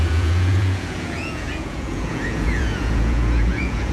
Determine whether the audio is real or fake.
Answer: fake